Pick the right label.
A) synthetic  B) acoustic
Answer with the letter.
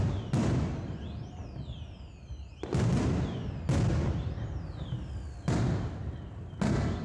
B